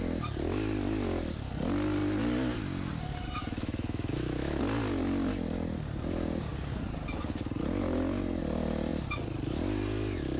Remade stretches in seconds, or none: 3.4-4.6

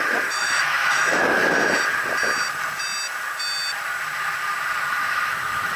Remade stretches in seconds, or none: 0.0-1.4; 4.9-5.8

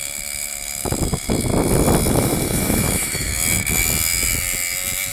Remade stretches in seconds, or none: 0.0-1.5; 2.1-3.3